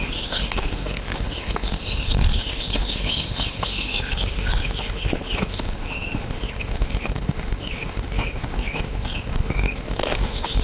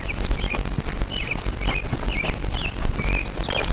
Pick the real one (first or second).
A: second